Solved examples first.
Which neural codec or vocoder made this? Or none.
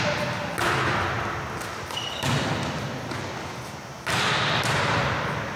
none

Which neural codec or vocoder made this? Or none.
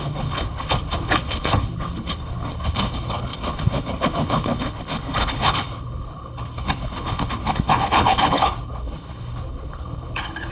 codec, HILCodec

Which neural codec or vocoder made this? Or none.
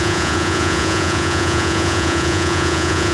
vocoder, Vocos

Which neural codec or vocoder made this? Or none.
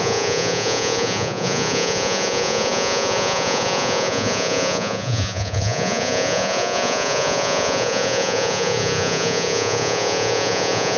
vocoder, Vocos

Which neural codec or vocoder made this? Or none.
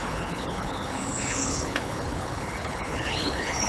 codec, HILCodec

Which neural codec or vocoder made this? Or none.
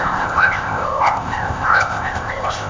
codec, ZipCodec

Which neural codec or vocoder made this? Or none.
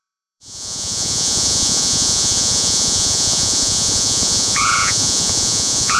vocoder, Vocos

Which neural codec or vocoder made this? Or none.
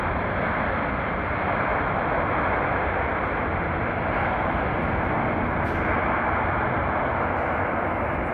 none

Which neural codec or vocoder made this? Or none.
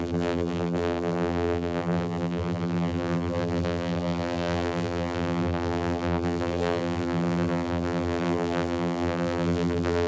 vocoder, BigVGAN v2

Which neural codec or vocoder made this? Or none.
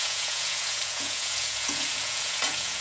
vocoder, Vocos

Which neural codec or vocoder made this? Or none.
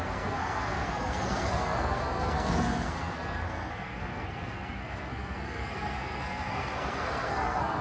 codec, SNAC